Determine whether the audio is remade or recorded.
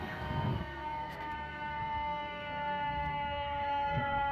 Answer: remade